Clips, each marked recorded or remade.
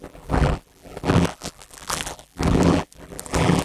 remade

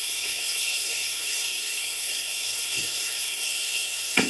remade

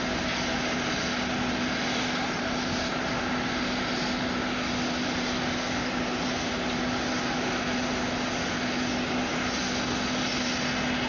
recorded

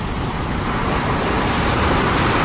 remade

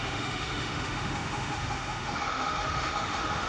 remade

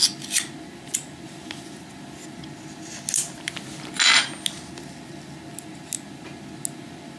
recorded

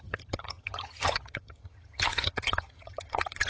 remade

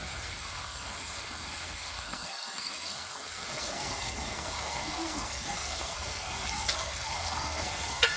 remade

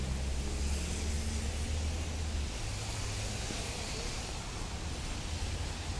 recorded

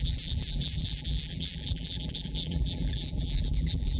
remade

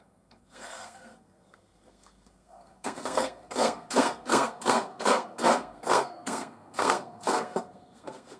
remade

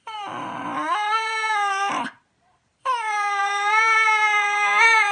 remade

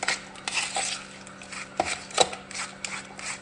recorded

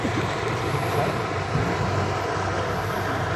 recorded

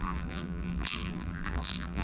remade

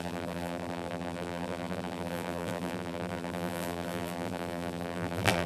remade